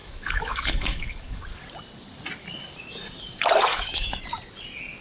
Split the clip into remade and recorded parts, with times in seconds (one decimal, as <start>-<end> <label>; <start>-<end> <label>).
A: 0.0-1.4 remade; 1.4-3.7 recorded; 3.7-4.2 remade; 4.2-5.0 recorded